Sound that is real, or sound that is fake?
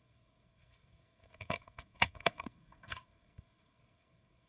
fake